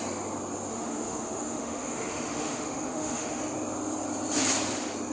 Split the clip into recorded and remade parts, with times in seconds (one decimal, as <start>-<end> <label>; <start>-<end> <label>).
0.0-0.7 recorded; 0.7-3.4 remade; 3.4-5.1 recorded